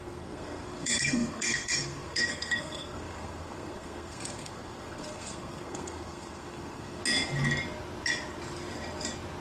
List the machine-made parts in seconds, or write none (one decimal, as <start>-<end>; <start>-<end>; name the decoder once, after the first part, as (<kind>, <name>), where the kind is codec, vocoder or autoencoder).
0.0-7.0 (codec, SNAC)